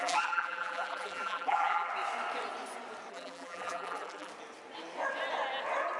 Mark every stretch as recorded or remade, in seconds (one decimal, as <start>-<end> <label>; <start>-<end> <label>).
0.0-1.9 remade; 1.9-3.1 recorded; 3.1-4.3 remade; 4.3-6.0 recorded